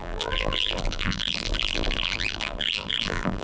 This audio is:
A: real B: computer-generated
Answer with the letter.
B